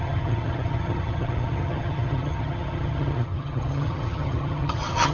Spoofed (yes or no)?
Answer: yes